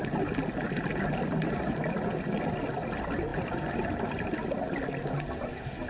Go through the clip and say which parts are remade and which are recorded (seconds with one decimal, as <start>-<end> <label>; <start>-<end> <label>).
0.0-5.9 recorded